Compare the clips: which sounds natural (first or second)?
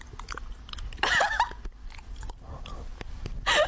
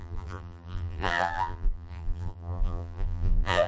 first